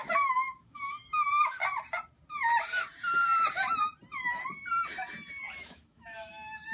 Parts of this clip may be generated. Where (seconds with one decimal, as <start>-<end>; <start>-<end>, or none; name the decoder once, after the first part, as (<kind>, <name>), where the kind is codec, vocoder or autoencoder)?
0.0-1.6 (autoencoder, DAC-VAE); 5.6-6.7